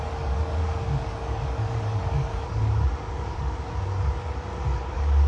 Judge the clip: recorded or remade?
remade